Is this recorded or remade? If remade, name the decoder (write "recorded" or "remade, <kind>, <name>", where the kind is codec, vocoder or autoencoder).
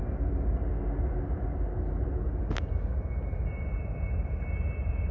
recorded